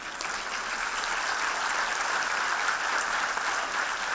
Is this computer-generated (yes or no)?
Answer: no